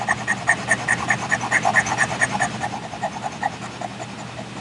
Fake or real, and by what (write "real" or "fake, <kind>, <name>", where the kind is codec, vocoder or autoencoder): real